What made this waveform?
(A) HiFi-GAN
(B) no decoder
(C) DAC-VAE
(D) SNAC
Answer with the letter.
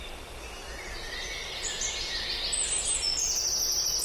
B